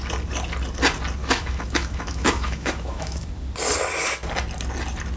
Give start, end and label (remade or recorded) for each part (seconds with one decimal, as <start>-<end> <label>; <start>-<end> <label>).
0.0-1.2 recorded; 1.2-3.3 remade; 3.3-5.2 recorded